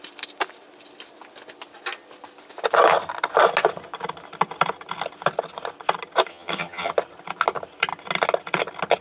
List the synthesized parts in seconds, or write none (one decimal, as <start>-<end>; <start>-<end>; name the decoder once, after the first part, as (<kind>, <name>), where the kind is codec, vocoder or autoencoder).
6.3-6.9 (vocoder, HiFi-GAN)